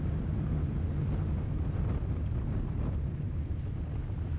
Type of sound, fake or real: real